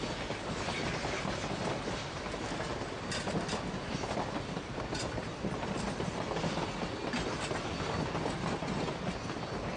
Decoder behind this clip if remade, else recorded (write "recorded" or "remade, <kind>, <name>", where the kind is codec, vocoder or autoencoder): recorded